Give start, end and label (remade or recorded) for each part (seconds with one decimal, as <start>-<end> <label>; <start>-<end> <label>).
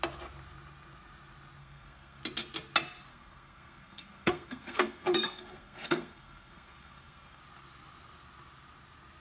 0.0-1.6 recorded; 1.6-2.2 remade; 2.2-3.1 recorded; 3.1-7.4 remade; 7.4-9.2 recorded